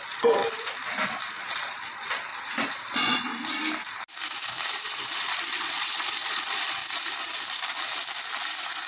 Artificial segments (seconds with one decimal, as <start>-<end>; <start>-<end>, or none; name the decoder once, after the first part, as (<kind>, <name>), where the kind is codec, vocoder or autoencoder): 0.0-0.4 (vocoder, Vocos); 1.4-2.3; 2.9-3.3; 5.2-6.8